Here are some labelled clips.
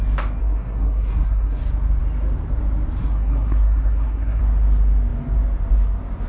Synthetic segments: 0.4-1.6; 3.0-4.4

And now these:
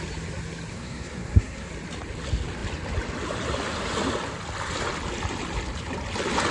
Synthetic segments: 0.7-1.7